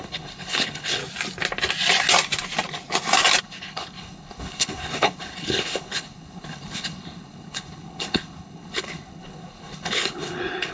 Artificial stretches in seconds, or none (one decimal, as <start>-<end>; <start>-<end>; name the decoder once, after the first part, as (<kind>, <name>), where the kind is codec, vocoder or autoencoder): 0.0-1.0 (codec, HILCodec); 3.4-10.7